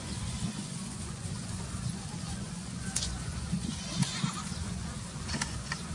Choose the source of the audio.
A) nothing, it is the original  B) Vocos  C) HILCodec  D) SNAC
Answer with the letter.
B